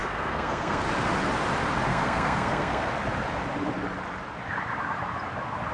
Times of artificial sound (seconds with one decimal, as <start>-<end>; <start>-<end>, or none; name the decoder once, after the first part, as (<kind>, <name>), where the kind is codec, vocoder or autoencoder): 0.0-0.8 (codec, SNAC); 1.9-2.9